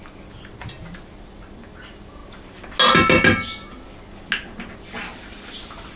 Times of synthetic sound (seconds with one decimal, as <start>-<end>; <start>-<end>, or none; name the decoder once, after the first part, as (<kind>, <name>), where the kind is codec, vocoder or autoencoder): none